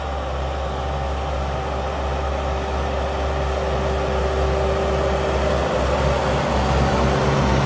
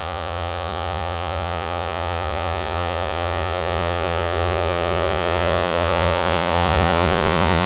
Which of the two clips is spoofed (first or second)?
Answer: second